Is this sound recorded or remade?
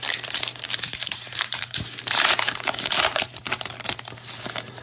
remade